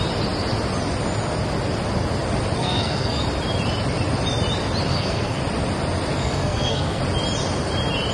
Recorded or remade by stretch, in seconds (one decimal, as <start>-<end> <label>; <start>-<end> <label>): 0.0-2.6 recorded; 2.6-3.2 remade; 3.2-4.9 recorded; 4.9-5.4 remade; 5.4-6.2 recorded; 6.2-7.0 remade; 7.0-8.1 recorded